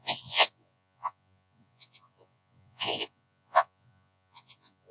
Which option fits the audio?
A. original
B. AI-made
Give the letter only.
B